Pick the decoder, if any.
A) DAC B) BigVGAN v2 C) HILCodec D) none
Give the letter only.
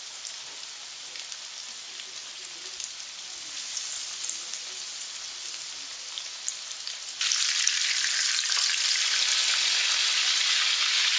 D